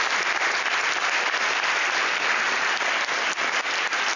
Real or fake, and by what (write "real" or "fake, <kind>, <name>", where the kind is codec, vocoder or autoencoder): real